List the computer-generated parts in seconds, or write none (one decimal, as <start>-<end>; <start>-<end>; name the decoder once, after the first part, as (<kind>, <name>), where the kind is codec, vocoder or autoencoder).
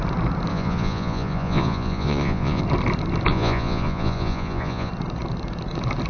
0.5-2.6 (vocoder, Vocos); 3.3-4.9